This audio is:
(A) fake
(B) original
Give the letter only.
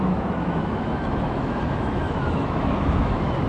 A